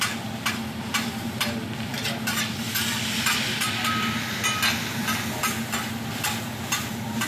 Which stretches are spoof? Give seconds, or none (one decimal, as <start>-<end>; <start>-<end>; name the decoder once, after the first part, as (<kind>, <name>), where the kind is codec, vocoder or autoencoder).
none